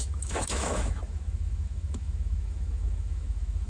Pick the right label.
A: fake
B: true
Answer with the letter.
A